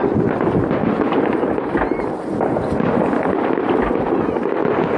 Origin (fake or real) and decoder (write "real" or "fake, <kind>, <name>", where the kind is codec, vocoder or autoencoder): real